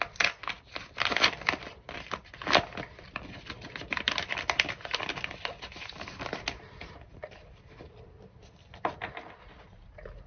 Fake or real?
real